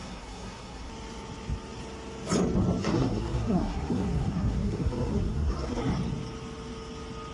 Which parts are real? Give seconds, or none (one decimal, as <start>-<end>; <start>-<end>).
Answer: 0.9-2.8; 5.8-7.3